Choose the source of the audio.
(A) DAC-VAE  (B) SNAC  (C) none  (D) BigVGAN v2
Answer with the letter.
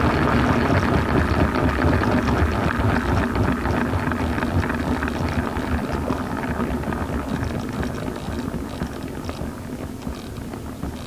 C